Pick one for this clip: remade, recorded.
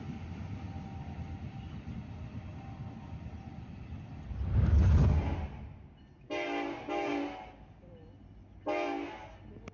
recorded